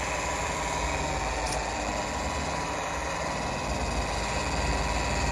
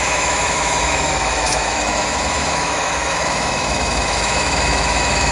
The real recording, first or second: first